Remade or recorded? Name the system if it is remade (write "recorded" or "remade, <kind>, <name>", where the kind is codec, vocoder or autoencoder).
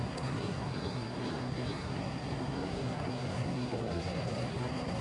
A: remade, codec, SNAC